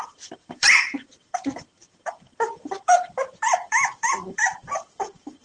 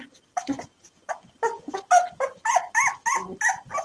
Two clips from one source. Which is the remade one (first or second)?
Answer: first